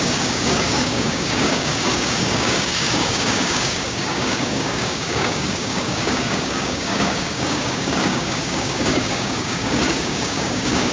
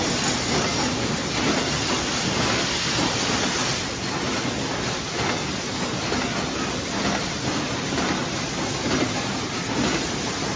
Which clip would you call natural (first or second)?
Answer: second